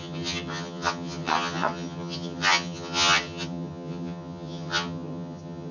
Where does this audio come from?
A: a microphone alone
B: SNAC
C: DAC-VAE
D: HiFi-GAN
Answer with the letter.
D